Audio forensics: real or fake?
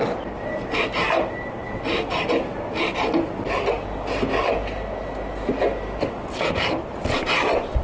real